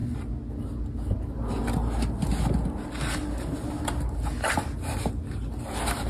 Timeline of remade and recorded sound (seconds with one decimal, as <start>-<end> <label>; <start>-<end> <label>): 0.0-6.1 recorded